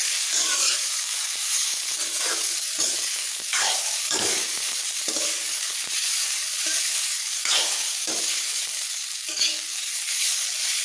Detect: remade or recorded remade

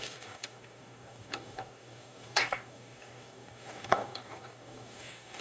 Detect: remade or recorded remade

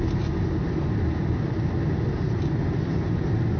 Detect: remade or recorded recorded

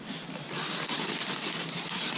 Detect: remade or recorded recorded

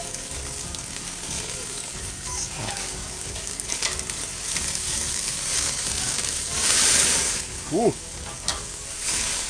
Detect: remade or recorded remade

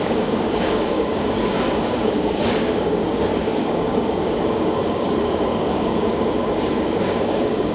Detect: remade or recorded remade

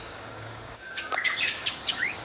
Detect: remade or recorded remade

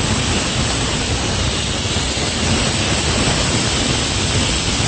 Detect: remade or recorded recorded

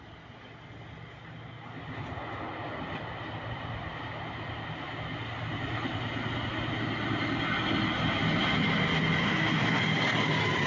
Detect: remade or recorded recorded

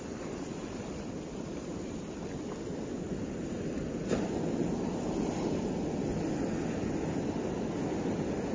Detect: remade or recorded recorded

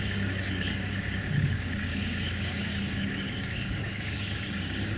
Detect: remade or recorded remade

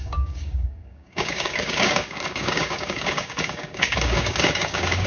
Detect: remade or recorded remade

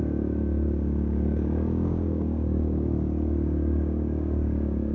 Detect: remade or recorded remade